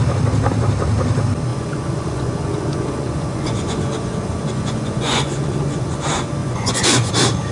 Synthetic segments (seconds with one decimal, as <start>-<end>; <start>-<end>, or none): 1.5-6.0; 6.4-7.1